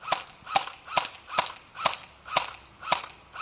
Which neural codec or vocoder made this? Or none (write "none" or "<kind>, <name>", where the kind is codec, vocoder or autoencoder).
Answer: none